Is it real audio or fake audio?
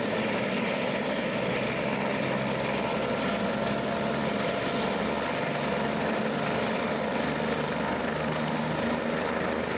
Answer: real